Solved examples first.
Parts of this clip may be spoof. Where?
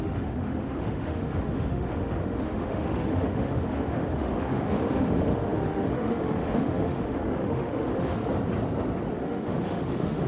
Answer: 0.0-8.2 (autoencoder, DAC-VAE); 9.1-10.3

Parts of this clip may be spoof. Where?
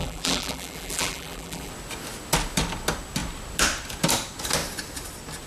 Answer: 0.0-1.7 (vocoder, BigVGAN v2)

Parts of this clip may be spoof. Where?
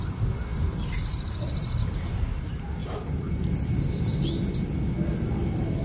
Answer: 0.5-2.1 (vocoder, BigVGAN v2); 2.8-3.5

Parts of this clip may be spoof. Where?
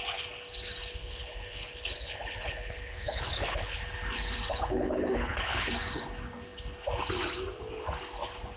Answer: 1.0-3.8 (codec, HILCodec); 4.5-5.7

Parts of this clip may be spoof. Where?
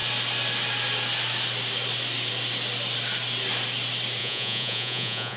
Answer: 4.2-5.4 (vocoder, Vocos)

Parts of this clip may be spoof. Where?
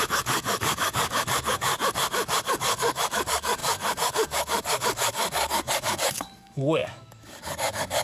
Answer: 0.0-1.7 (codec, DAC); 2.5-8.0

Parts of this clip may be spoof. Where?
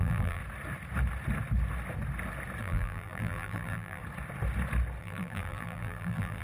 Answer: 0.0-0.4 (vocoder, BigVGAN v2); 2.6-4.0; 5.0-6.4